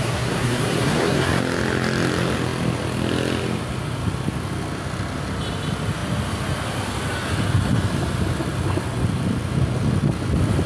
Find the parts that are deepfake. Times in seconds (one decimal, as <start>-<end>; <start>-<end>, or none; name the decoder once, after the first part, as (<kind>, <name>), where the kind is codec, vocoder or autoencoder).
0.0-1.4 (codec, SNAC)